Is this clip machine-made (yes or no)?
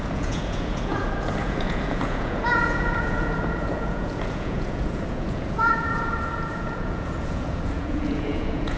yes